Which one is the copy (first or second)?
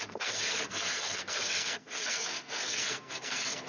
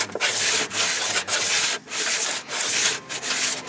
first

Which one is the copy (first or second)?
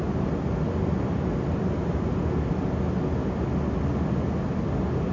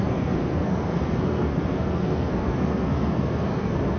second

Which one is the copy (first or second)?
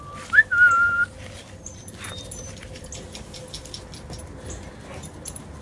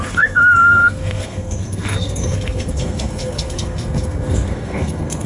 second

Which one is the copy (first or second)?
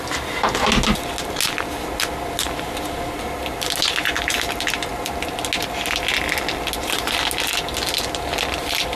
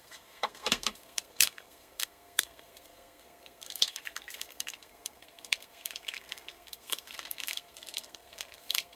second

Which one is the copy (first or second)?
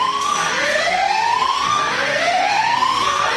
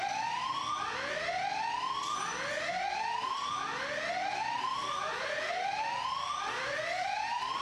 first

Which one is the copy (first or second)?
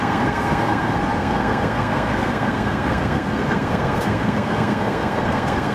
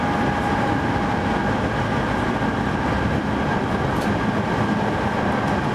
first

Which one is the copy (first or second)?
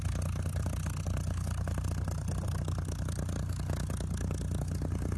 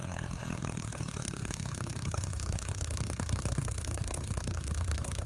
second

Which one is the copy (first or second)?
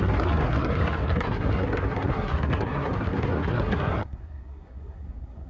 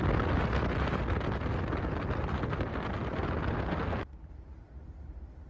first